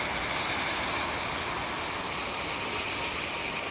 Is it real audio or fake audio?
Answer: real